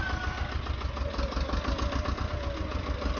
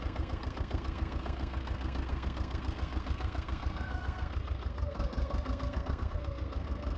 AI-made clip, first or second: second